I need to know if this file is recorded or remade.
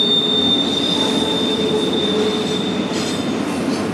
recorded